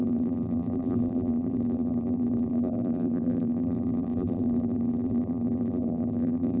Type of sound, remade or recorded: remade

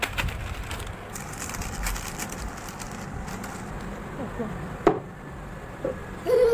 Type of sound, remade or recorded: recorded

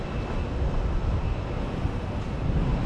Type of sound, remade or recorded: recorded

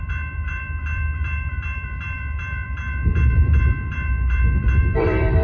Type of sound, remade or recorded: remade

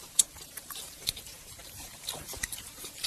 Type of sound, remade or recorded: remade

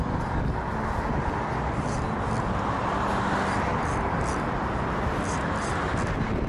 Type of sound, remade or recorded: recorded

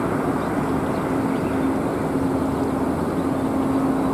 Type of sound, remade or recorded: recorded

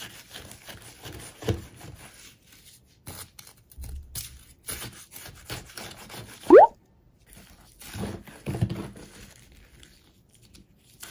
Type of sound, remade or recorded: recorded